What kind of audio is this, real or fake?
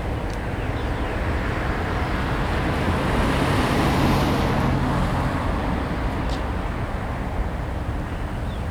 real